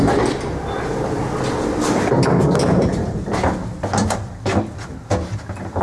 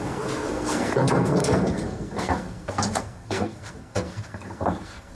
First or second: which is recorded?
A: first